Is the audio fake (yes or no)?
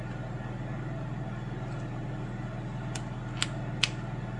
no